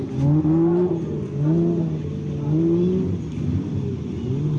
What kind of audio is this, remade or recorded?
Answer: recorded